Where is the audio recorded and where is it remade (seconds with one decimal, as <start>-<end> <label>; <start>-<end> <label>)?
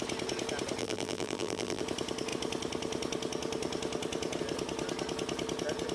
0.0-0.8 recorded; 0.8-1.8 remade; 1.8-5.9 recorded